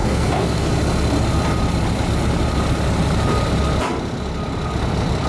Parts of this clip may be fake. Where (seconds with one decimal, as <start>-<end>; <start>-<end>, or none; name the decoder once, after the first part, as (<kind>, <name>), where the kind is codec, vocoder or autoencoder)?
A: 0.0-0.7 (codec, SNAC)